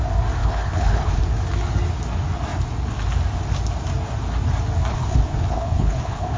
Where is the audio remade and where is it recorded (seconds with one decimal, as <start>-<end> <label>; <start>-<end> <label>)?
0.0-0.4 recorded; 0.4-1.2 remade; 1.2-4.9 recorded; 4.9-6.4 remade